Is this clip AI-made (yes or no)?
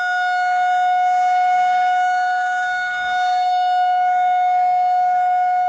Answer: yes